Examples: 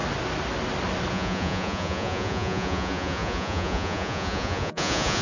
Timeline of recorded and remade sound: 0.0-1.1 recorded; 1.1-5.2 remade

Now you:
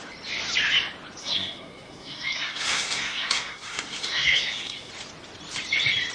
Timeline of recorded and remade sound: 0.0-1.2 recorded; 1.2-4.9 remade; 4.9-6.1 recorded

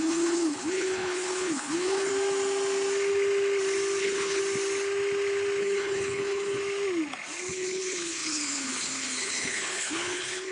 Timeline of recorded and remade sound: 0.0-2.1 remade; 2.1-4.0 recorded; 4.0-4.4 remade; 4.4-5.6 recorded; 5.6-6.6 remade; 6.6-7.5 recorded; 7.5-10.5 remade

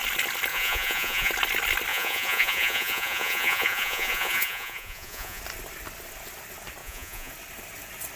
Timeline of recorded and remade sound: 0.0-0.5 recorded; 0.5-1.3 remade; 1.3-1.9 recorded; 1.9-5.4 remade; 5.4-6.8 recorded; 6.8-7.3 remade; 7.3-8.2 recorded

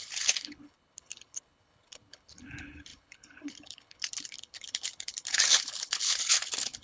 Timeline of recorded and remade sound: 0.0-6.8 remade

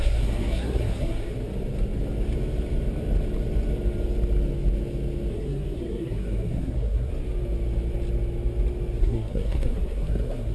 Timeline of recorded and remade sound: 0.0-1.3 remade; 1.3-5.3 recorded; 5.3-7.1 remade; 7.1-9.0 recorded; 9.0-10.5 remade

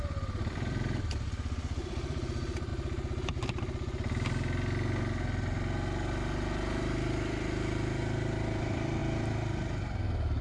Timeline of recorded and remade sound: 0.0-2.7 remade; 2.7-6.8 recorded; 6.8-9.0 remade; 9.0-10.4 recorded